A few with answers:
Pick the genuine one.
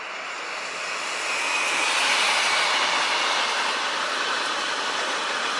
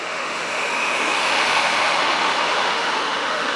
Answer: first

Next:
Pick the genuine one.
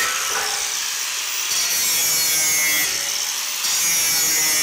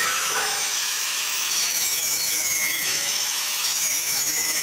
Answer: first